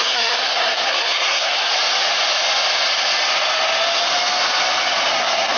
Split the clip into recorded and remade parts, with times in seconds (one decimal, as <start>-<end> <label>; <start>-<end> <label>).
0.0-1.7 remade; 1.7-5.1 recorded; 5.1-5.6 remade